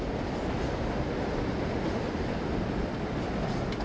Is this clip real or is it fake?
real